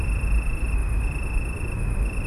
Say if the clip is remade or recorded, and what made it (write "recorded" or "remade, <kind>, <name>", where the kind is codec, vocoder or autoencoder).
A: recorded